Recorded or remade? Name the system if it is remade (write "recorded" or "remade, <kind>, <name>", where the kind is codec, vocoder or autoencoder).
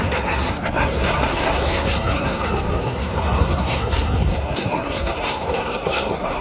remade, codec, SNAC